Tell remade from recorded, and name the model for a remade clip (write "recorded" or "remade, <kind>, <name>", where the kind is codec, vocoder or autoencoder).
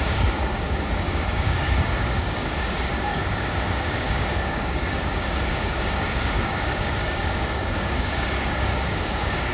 remade, codec, DAC